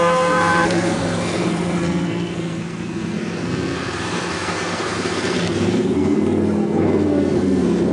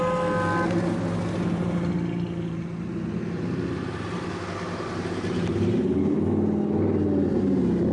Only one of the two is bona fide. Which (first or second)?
second